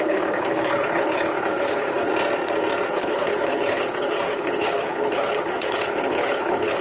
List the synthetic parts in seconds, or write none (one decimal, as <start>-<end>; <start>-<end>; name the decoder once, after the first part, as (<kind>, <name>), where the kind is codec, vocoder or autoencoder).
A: 0.0-2.1 (codec, HILCodec); 2.9-6.8